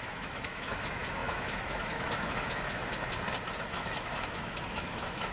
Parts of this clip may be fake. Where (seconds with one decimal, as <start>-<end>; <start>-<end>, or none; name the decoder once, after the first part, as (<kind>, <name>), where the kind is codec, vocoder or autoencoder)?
0.0-2.8 (autoencoder, DAC-VAE); 3.7-5.3